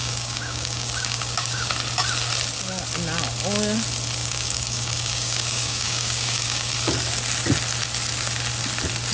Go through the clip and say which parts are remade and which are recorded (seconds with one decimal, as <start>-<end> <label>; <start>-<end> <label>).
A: 0.0-1.7 remade; 1.7-4.2 recorded; 4.2-6.7 remade; 6.7-9.1 recorded